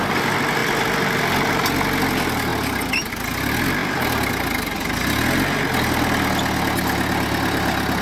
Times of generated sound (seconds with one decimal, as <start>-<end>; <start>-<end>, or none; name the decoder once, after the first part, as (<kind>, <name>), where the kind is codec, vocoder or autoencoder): none